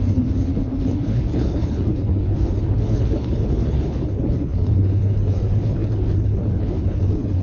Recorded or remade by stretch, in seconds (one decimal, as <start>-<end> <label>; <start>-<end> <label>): 0.0-7.4 remade